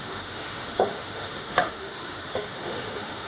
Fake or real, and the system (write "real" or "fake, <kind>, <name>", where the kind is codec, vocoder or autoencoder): fake, autoencoder, DAC-VAE